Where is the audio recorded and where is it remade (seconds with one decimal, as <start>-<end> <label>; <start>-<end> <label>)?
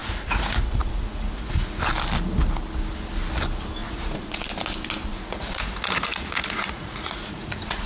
0.0-1.8 remade; 1.8-3.8 recorded; 3.8-4.5 remade; 4.5-5.1 recorded; 5.1-7.9 remade